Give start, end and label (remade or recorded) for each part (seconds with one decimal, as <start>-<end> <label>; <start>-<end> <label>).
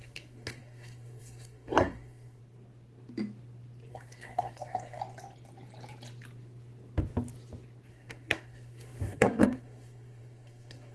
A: 0.0-2.4 remade; 2.4-3.9 recorded; 3.9-5.0 remade; 5.0-7.9 recorded; 7.9-10.9 remade